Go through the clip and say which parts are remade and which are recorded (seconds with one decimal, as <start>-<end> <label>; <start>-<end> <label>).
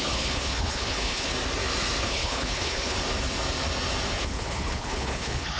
0.0-1.3 remade; 1.3-2.0 recorded; 2.0-3.0 remade; 3.0-4.2 recorded; 4.2-5.6 remade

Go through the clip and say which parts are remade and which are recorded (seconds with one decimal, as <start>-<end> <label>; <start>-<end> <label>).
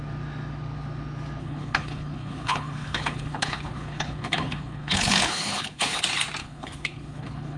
0.0-1.4 recorded; 1.4-6.0 remade; 6.0-6.4 recorded; 6.4-7.6 remade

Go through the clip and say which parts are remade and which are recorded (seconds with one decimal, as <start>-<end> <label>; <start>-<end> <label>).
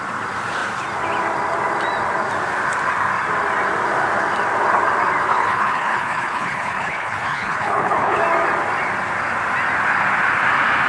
0.0-5.3 recorded; 5.3-8.2 remade; 8.2-10.9 recorded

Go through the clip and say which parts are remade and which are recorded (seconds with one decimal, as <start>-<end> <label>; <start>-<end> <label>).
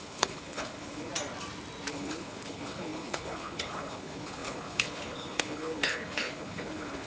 0.0-1.1 remade; 1.1-1.9 recorded; 1.9-7.1 remade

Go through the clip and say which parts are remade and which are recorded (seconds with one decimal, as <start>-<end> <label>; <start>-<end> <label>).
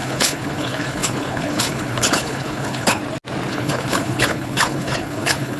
0.0-3.0 remade; 3.0-3.5 recorded; 3.5-5.6 remade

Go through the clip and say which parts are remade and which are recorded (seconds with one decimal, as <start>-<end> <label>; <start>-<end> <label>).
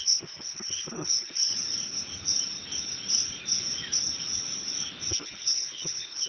0.0-1.5 remade; 1.5-5.1 recorded; 5.1-6.3 remade